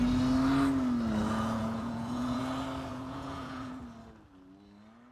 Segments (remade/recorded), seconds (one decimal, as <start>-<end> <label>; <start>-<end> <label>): 0.0-1.2 recorded; 1.2-2.4 remade; 2.4-2.9 recorded; 2.9-3.8 remade; 3.8-5.1 recorded